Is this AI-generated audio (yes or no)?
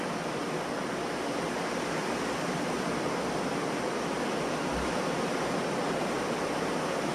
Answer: no